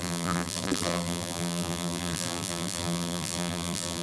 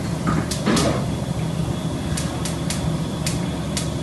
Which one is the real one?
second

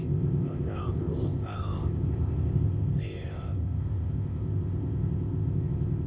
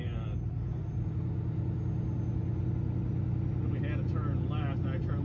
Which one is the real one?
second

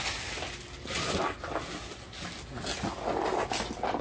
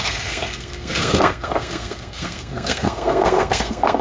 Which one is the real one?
first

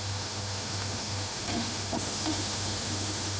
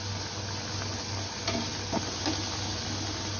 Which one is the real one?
second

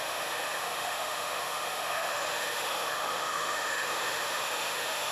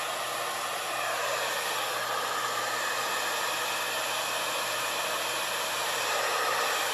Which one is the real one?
second